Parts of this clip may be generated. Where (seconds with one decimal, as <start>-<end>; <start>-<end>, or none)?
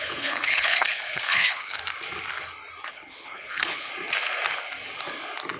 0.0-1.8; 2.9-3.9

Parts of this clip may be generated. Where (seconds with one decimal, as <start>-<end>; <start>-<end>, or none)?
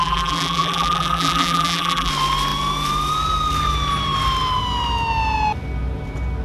0.0-2.1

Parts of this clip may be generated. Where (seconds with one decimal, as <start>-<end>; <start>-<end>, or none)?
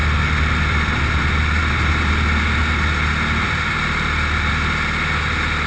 none